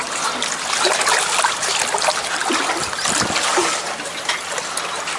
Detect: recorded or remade recorded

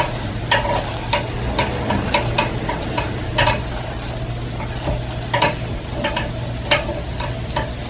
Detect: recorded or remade recorded